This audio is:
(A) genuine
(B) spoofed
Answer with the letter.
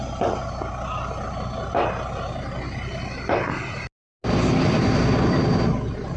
A